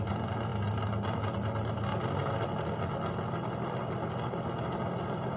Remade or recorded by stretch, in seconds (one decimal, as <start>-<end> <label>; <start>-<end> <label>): 0.0-1.9 recorded; 1.9-5.4 remade